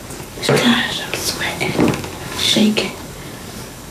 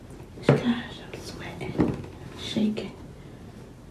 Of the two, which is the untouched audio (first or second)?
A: second